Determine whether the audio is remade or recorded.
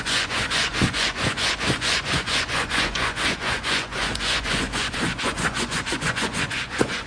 remade